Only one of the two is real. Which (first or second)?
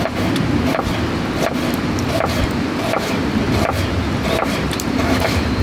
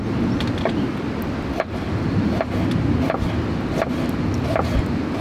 second